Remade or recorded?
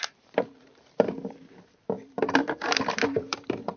remade